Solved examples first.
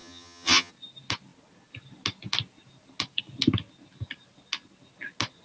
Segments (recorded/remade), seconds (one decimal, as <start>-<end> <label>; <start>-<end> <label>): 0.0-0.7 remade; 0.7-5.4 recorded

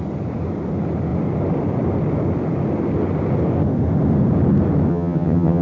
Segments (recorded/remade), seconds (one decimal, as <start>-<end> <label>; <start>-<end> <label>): 0.0-4.9 recorded; 4.9-5.6 remade

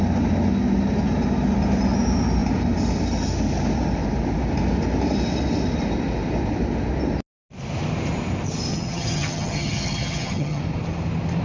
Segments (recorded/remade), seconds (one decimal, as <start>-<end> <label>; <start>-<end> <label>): 0.0-8.7 recorded; 8.7-10.6 remade; 10.6-11.4 recorded